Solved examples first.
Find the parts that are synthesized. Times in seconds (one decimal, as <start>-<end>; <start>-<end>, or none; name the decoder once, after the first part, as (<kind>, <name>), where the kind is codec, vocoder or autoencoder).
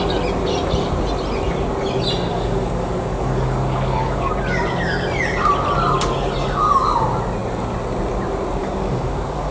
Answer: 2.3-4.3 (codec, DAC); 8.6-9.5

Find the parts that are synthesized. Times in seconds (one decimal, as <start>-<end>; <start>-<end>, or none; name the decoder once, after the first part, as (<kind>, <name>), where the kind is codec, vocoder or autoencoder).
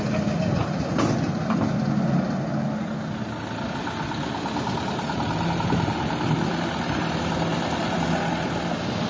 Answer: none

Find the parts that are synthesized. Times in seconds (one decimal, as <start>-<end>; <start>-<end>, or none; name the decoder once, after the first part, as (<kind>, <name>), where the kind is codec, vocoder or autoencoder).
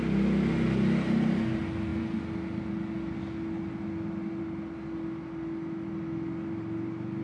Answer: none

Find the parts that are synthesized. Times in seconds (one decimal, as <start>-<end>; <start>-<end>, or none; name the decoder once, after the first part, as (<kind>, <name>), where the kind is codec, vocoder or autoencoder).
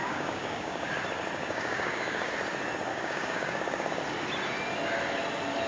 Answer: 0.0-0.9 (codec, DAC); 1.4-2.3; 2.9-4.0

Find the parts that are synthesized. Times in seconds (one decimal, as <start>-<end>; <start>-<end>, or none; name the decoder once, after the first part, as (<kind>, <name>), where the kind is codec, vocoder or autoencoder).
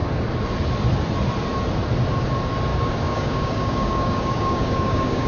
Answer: 2.7-5.3 (codec, DAC)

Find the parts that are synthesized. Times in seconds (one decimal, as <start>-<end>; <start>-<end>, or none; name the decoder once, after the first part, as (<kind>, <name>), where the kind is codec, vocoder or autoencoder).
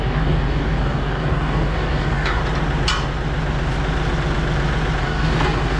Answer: 0.0-2.4 (codec, DAC); 5.0-5.8